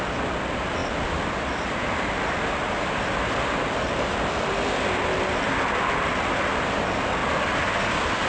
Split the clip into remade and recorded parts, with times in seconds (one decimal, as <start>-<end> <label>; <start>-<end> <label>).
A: 0.0-8.3 recorded